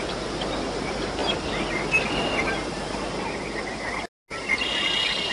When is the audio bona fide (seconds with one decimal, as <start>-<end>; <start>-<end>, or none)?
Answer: 0.0-5.3